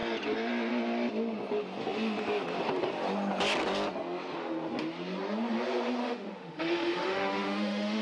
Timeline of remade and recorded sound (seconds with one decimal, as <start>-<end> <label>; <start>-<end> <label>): 0.0-6.0 recorded; 6.0-8.0 remade